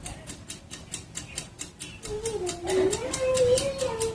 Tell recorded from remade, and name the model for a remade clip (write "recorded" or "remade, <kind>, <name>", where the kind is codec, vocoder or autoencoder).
recorded